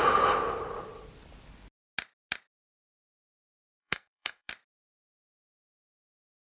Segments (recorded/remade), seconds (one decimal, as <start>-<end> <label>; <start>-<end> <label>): 0.0-3.8 recorded; 3.8-4.5 remade; 4.5-6.6 recorded